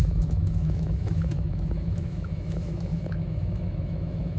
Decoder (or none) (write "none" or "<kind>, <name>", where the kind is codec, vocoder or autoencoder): autoencoder, DAC-VAE